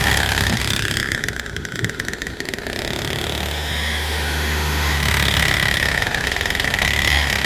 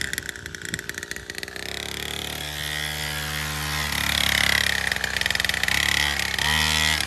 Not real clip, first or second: first